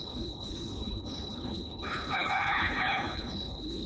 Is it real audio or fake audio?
fake